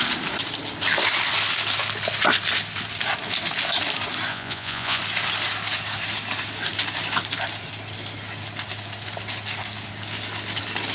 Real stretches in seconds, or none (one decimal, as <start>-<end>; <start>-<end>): 0.0-4.3; 5.0-10.9